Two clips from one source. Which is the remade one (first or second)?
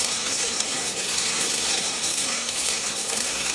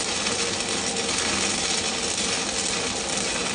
first